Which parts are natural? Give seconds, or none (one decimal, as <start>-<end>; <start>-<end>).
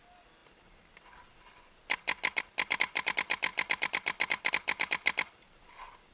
0.0-6.1